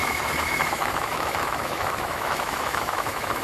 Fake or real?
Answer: fake